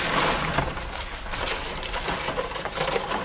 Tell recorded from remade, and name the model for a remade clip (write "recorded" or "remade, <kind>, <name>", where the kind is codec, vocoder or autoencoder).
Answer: remade, vocoder, BigVGAN v2